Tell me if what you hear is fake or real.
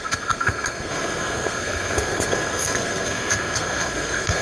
fake